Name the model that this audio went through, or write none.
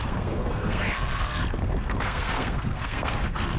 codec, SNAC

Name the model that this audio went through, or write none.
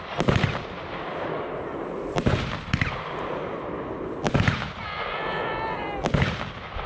none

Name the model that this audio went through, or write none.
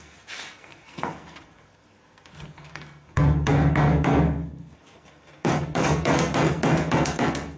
codec, SNAC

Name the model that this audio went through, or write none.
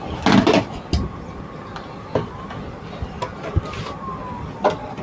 none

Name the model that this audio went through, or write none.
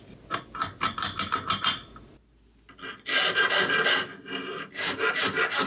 none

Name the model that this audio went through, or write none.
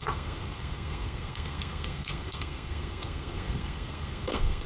codec, SNAC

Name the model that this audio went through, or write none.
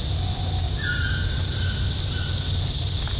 none